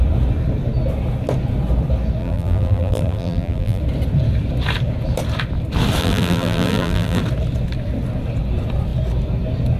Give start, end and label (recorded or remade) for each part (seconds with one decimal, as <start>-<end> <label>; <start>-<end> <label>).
0.0-2.2 recorded; 2.2-3.8 remade; 3.8-6.0 recorded; 6.0-7.2 remade; 7.2-9.8 recorded

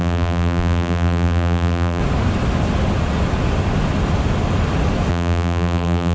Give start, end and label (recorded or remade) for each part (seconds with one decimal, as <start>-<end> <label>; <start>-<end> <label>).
0.0-2.0 remade; 2.0-5.1 recorded; 5.1-6.1 remade

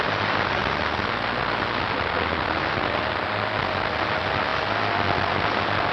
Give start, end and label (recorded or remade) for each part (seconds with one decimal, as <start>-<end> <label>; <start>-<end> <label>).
0.0-5.9 recorded

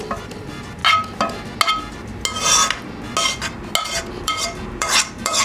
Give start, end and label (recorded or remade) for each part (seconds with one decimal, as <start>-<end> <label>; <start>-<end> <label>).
0.0-0.8 remade; 0.8-4.0 recorded; 4.0-5.4 remade

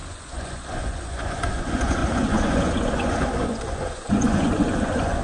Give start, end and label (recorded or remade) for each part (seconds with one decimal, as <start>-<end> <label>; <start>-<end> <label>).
0.0-5.2 remade

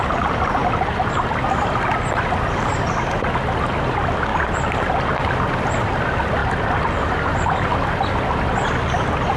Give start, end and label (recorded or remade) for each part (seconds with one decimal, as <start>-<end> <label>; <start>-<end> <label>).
0.0-9.4 recorded

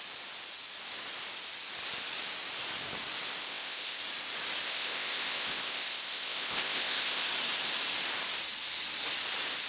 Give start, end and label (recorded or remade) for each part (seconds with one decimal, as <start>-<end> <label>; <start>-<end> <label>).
0.0-3.4 recorded; 3.4-4.0 remade; 4.0-4.6 recorded; 4.6-7.3 remade; 7.3-9.7 recorded